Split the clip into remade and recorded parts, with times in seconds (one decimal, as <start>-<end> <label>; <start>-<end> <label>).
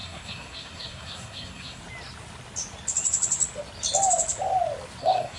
0.0-1.8 remade; 1.8-5.0 recorded; 5.0-5.4 remade